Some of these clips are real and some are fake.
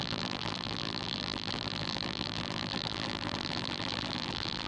fake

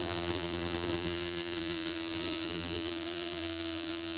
fake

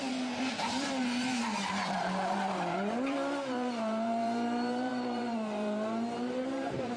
fake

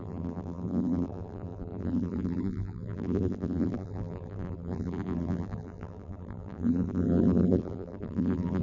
fake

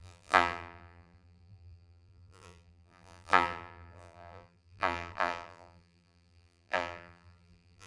fake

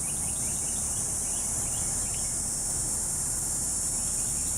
real